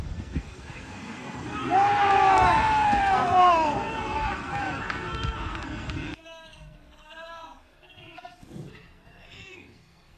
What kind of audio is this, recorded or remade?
remade